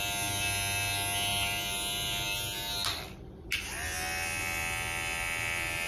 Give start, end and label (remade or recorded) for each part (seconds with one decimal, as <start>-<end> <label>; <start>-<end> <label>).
0.0-5.9 recorded